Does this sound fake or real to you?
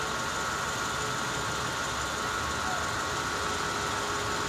real